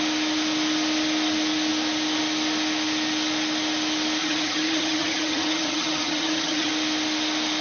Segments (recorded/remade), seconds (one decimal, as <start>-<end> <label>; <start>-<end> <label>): 0.0-4.2 recorded; 4.2-6.7 remade; 6.7-7.6 recorded